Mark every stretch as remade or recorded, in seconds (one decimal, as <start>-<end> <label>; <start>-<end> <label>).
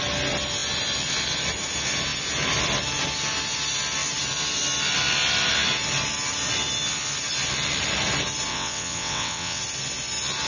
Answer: 0.0-8.5 recorded; 8.5-9.6 remade; 9.6-10.5 recorded